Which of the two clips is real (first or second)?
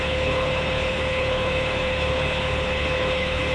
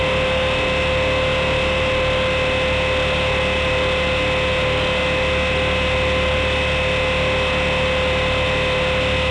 second